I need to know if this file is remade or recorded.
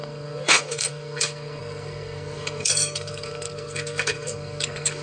remade